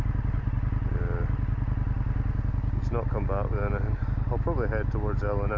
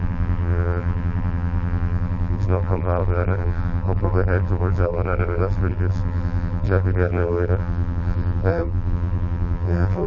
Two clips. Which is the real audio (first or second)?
first